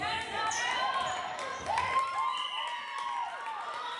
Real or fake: real